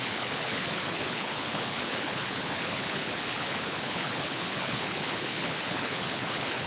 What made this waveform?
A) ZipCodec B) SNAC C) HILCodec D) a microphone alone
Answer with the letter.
C